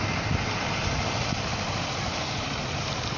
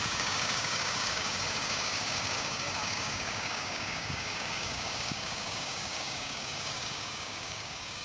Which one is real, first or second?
first